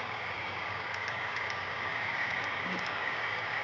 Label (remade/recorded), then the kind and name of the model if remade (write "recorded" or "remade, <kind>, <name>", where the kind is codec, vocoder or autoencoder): remade, codec, DAC